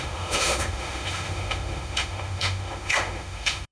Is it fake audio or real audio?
fake